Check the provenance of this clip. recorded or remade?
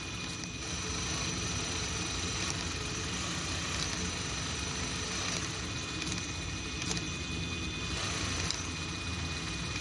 recorded